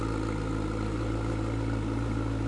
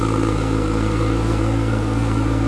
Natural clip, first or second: first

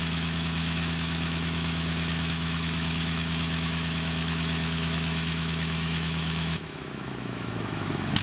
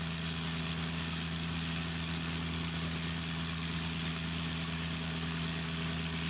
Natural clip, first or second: second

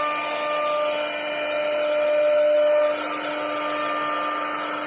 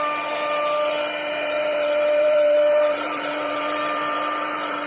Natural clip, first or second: first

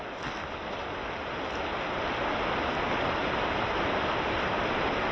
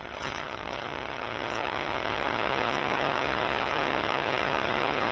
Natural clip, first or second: first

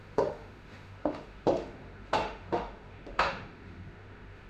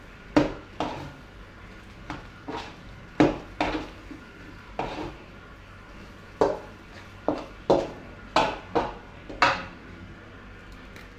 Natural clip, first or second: second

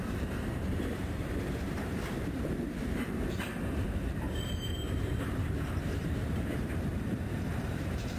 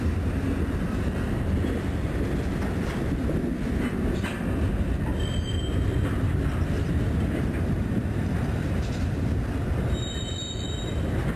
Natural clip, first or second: second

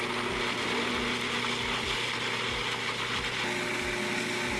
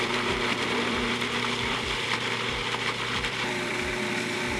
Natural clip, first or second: first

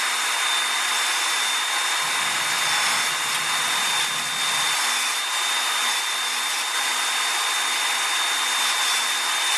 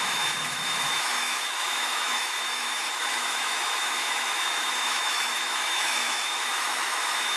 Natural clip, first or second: first